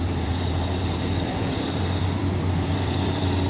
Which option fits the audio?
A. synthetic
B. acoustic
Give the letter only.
A